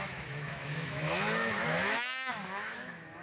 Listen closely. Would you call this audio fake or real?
fake